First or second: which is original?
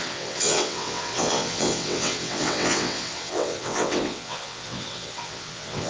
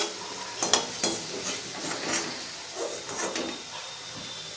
second